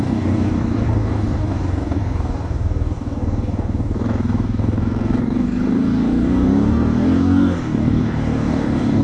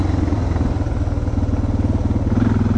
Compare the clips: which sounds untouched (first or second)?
second